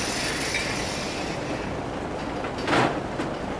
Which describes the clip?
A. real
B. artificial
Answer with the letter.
A